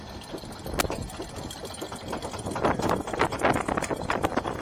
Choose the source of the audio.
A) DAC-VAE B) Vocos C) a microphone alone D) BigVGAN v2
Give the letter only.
C